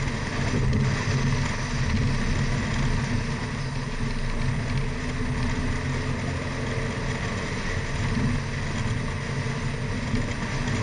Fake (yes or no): no